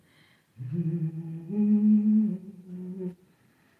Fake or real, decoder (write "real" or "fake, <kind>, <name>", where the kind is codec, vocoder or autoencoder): real